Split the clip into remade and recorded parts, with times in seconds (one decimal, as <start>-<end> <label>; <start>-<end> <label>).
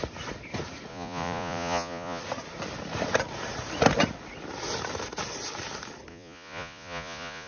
0.0-0.9 recorded; 0.9-2.2 remade; 2.2-6.1 recorded; 6.1-7.5 remade